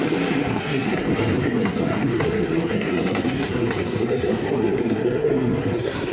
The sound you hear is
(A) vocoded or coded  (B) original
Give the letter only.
A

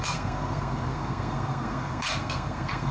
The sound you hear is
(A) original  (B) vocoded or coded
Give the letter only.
B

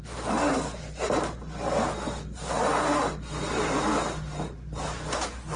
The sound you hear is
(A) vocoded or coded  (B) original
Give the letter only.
B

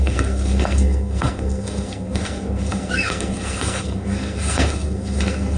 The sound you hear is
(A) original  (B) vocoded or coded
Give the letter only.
B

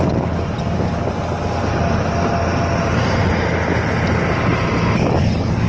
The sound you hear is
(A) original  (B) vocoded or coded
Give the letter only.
A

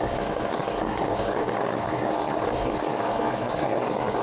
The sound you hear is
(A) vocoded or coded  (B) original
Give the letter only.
A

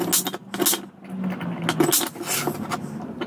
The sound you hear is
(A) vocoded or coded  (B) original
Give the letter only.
B